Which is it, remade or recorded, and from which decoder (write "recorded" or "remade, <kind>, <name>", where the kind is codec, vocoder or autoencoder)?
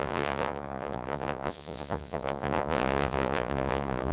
remade, vocoder, Vocos